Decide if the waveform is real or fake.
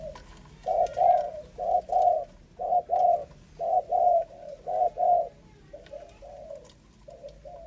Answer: real